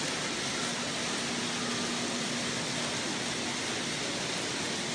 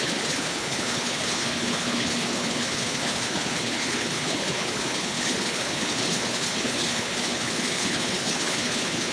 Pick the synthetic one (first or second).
second